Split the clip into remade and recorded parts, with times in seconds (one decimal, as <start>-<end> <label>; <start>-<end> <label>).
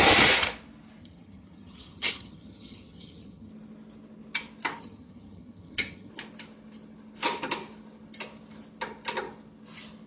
0.0-1.0 recorded; 1.0-3.5 remade; 3.5-4.8 recorded; 4.8-6.1 remade; 6.1-10.1 recorded